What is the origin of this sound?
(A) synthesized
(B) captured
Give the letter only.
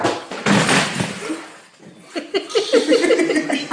B